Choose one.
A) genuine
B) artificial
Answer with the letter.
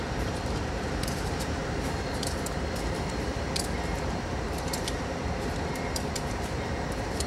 B